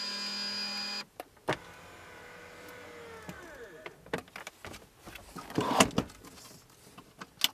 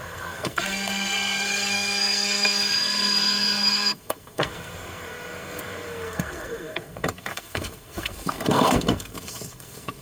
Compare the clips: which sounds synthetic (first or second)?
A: second